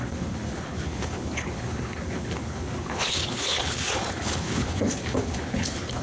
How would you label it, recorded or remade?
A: remade